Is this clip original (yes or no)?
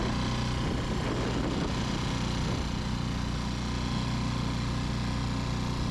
yes